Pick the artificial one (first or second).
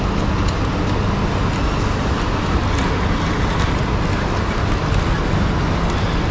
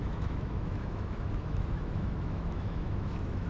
second